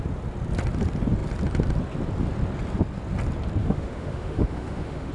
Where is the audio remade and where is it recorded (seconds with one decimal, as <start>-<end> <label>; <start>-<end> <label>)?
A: 0.0-3.6 recorded; 3.6-5.1 remade